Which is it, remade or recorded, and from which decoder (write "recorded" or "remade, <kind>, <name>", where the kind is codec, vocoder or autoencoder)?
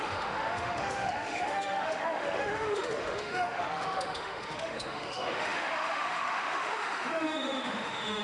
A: remade, autoencoder, DAC-VAE